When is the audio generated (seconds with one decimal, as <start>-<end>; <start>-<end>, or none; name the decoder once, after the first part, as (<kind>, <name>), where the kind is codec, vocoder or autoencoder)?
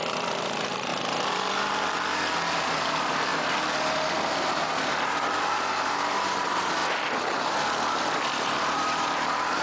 0.0-0.9 (vocoder, BigVGAN v2); 2.5-3.3; 4.3-6.8; 8.3-9.6